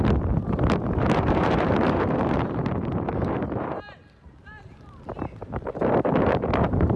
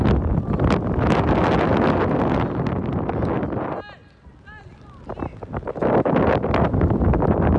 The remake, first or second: first